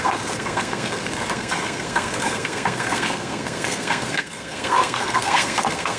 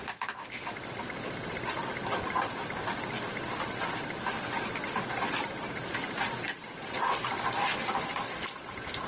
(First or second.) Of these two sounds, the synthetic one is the first